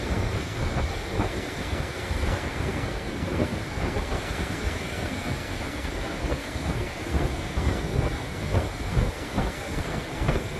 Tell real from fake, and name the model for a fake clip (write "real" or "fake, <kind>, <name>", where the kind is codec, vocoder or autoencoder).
fake, codec, SNAC